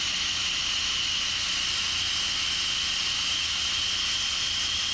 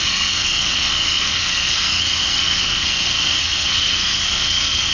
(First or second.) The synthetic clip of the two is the second